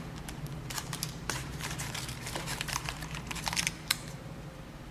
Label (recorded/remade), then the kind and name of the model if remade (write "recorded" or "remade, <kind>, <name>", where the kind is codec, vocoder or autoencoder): remade, vocoder, BigVGAN v2